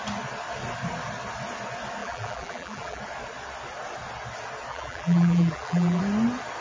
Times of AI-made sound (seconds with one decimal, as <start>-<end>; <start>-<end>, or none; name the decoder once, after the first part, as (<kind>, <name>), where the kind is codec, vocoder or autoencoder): 2.0-3.0 (vocoder, BigVGAN v2); 4.7-6.0